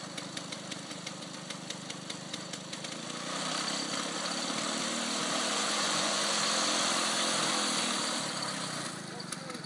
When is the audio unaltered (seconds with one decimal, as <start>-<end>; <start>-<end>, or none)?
0.0-5.5; 6.3-9.7